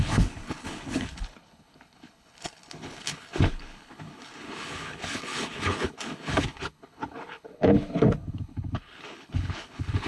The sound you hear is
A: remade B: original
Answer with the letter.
A